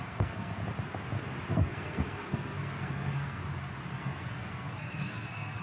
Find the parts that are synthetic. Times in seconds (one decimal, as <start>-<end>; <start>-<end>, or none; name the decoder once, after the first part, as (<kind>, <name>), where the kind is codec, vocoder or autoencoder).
0.0-0.6 (codec, SNAC); 1.5-3.4; 3.9-5.6

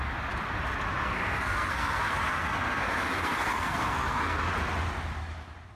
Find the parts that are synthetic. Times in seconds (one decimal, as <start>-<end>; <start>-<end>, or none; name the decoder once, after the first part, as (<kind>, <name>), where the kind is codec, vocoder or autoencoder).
1.0-4.5 (codec, SNAC)

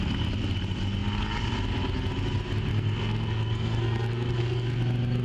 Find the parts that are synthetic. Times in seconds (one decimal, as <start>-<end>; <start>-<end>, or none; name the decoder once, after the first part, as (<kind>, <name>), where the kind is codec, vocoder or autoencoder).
2.7-4.8 (codec, SNAC)

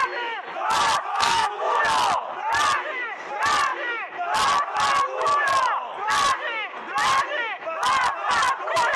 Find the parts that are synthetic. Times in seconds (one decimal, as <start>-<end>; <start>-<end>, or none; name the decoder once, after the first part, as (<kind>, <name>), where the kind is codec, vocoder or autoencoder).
1.1-1.8 (codec, SNAC)

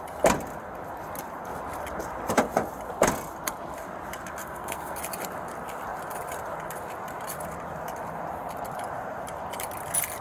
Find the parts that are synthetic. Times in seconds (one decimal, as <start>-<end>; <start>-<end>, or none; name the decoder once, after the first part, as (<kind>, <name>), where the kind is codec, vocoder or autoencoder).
4.4-5.0 (codec, SNAC)

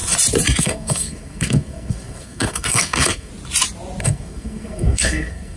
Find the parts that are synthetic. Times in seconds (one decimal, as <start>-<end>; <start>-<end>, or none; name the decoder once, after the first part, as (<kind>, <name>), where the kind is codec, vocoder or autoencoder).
0.6-3.3 (codec, SNAC); 4.0-5.6

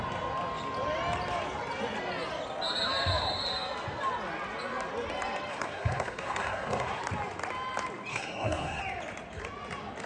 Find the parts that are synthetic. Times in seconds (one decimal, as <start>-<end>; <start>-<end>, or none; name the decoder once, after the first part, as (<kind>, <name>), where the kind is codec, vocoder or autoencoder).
5.5-7.0 (codec, SNAC); 8.1-8.8